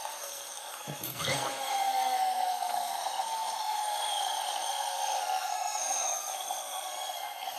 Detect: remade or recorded remade